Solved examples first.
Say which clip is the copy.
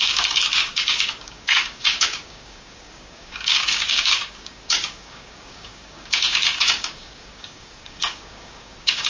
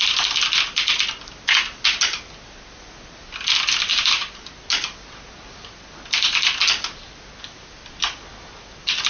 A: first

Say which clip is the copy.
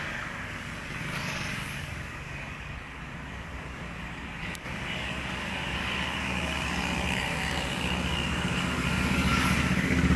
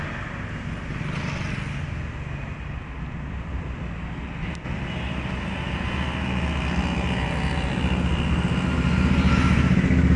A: first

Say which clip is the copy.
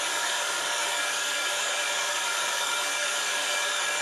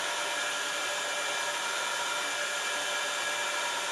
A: first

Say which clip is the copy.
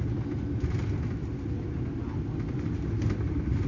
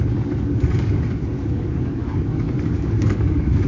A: second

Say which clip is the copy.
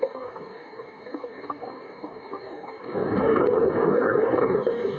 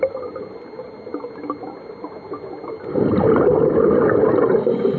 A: first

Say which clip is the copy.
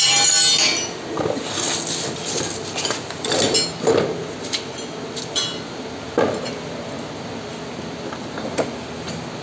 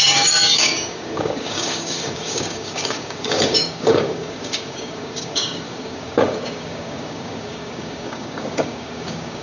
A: second